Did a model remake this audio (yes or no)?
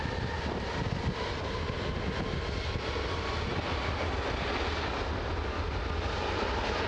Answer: no